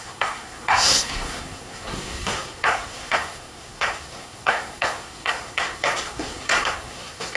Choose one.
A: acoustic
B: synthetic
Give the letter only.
B